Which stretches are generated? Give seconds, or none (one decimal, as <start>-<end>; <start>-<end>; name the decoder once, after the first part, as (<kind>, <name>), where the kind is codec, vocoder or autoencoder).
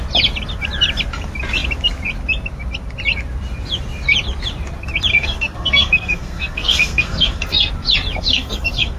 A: 5.1-7.7 (codec, SNAC); 8.3-9.0